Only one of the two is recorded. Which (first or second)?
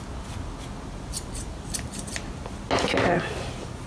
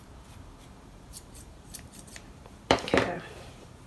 first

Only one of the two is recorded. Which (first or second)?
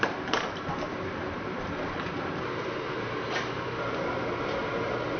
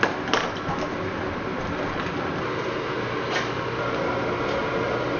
second